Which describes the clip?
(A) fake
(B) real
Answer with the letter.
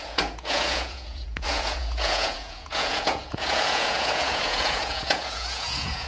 A